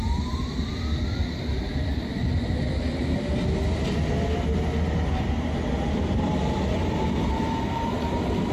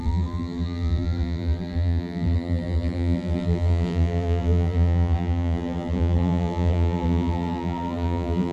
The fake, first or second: second